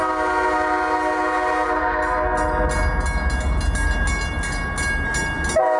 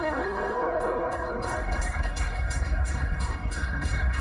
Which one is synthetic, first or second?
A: second